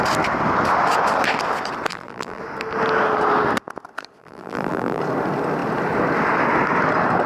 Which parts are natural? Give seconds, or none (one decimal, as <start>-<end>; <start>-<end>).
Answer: 0.0-1.9; 2.4-4.2; 5.0-7.3